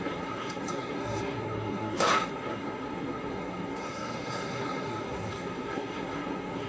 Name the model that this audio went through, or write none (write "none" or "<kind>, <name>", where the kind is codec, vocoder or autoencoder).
codec, SNAC